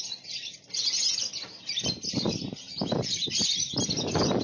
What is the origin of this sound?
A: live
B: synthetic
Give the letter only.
A